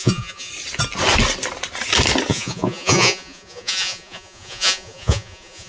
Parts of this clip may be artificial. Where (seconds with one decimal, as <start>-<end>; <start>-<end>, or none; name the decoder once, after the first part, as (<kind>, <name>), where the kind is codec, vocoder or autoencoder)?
0.0-0.5 (vocoder, Vocos); 2.3-5.7